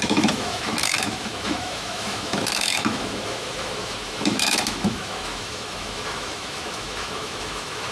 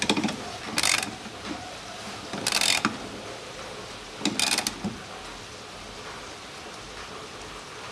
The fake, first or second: first